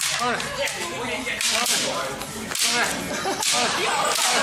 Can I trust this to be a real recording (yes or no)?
yes